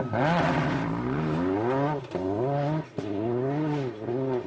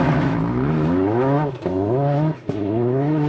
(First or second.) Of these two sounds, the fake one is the second